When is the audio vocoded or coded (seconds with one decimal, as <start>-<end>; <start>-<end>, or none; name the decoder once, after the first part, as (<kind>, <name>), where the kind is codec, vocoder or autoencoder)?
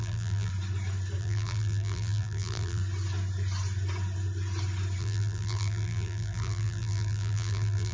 0.0-0.5 (vocoder, BigVGAN v2); 1.2-2.8; 5.0-7.9